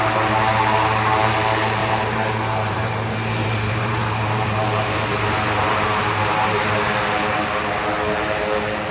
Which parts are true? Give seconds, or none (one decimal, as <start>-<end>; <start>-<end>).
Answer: 0.0-1.8; 6.7-8.9